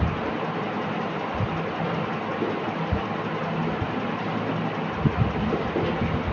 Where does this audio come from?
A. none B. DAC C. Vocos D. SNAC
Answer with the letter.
A